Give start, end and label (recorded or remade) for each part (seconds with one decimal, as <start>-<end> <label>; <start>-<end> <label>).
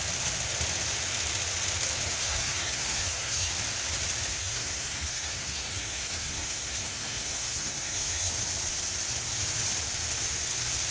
0.0-2.2 recorded; 2.2-3.5 remade; 3.5-4.3 recorded; 4.3-8.3 remade; 8.3-10.9 recorded